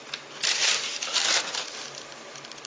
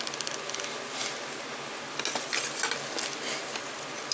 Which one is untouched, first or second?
second